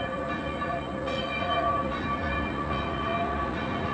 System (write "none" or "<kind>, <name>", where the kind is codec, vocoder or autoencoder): vocoder, Vocos